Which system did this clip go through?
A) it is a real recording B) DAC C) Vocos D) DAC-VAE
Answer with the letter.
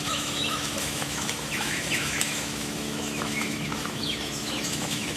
D